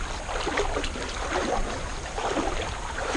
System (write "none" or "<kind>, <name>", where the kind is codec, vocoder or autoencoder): none